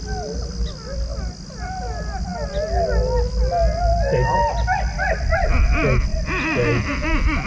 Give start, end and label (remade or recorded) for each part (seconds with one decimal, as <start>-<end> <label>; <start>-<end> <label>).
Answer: 0.0-7.5 recorded